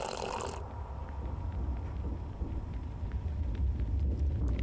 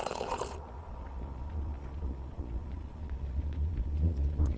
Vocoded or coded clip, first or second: second